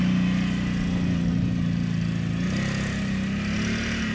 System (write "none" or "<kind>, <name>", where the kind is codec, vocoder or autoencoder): none